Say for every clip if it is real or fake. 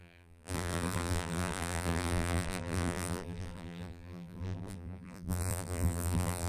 fake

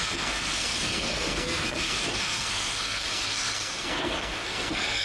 fake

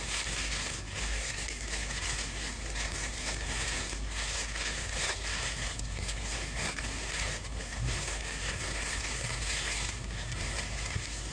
fake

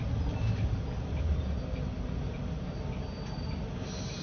real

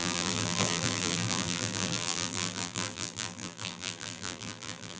fake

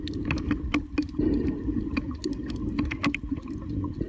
real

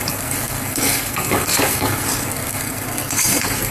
fake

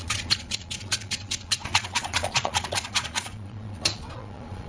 fake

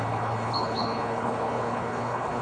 fake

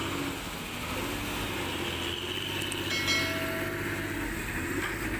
real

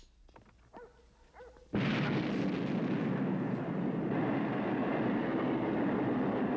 real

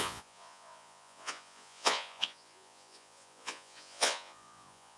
fake